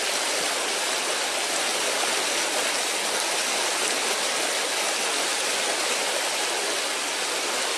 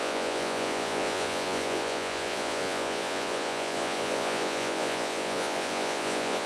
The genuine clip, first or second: first